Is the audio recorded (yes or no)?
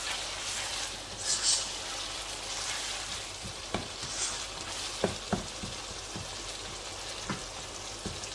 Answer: yes